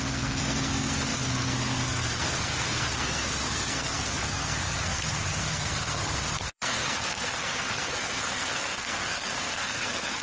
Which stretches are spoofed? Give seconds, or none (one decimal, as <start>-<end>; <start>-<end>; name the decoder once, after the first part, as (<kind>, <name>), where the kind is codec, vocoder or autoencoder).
0.0-10.2 (codec, SNAC)